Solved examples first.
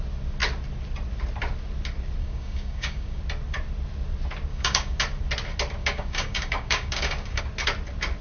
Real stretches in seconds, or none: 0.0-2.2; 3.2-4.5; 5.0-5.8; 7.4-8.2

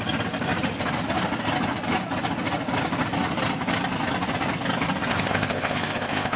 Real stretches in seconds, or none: 0.0-5.1

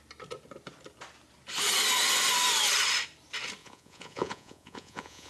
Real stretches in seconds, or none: 0.0-3.6

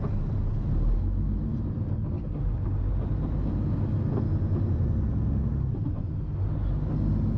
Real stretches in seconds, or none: 0.0-7.4

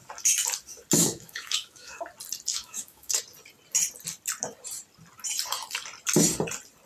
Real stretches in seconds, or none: 0.0-1.0; 2.0-2.5; 3.2-6.9